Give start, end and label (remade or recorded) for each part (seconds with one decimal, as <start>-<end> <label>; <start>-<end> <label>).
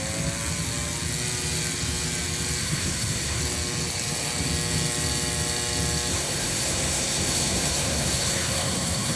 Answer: 0.0-2.6 recorded; 2.6-3.4 remade; 3.4-6.1 recorded; 6.1-9.2 remade